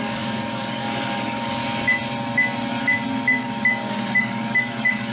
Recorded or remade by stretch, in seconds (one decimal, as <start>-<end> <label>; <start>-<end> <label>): 0.0-1.6 remade; 1.6-3.5 recorded; 3.5-5.1 remade